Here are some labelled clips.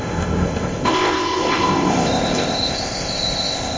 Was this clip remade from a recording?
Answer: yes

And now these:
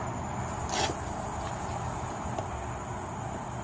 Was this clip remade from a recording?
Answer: no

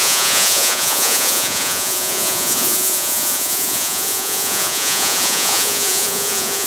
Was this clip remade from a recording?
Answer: yes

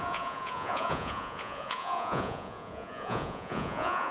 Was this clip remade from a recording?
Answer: yes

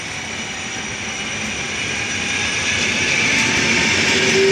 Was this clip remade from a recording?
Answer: no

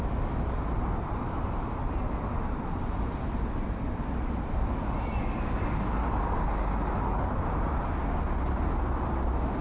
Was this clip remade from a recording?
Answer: no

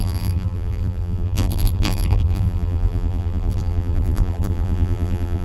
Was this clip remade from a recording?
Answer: yes